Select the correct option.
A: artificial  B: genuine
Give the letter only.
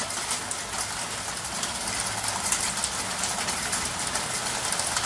B